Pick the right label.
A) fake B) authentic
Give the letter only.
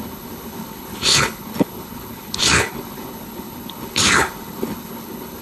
A